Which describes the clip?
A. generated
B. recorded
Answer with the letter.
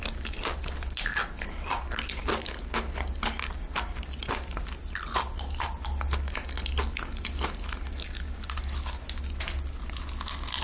B